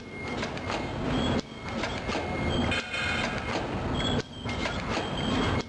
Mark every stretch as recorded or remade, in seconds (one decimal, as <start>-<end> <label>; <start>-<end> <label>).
0.0-5.7 recorded